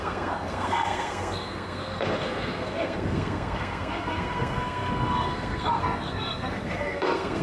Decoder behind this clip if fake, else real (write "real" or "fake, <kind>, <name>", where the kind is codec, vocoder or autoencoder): fake, codec, SNAC